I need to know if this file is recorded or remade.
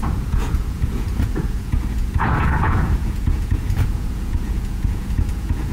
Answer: remade